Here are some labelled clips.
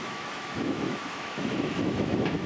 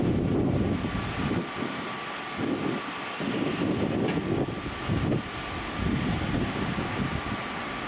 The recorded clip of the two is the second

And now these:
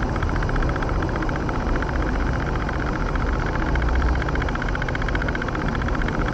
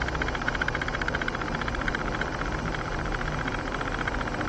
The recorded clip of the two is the second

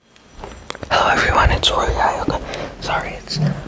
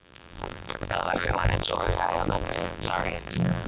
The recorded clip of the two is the first